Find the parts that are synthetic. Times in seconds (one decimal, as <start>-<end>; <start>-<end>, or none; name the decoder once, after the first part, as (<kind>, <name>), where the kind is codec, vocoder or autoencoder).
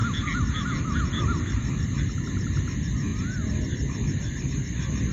0.0-2.0 (vocoder, BigVGAN v2); 3.1-4.5